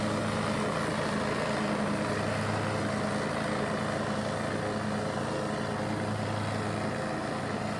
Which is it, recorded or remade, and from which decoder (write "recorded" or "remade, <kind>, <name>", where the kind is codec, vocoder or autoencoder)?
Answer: recorded